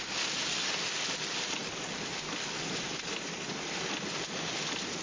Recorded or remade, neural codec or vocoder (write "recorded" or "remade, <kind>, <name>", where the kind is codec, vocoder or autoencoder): recorded